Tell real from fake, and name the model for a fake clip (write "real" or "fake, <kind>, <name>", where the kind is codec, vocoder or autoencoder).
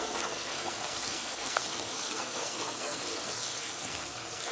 fake, codec, SNAC